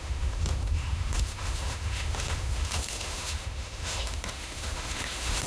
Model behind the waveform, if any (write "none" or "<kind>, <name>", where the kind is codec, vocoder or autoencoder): autoencoder, DAC-VAE